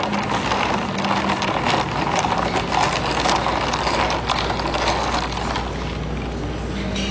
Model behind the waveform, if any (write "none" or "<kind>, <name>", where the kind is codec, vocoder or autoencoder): none